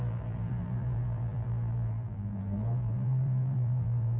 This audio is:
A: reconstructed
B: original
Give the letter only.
A